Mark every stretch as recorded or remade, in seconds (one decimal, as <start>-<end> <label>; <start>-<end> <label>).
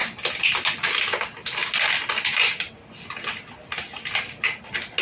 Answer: 0.0-5.0 recorded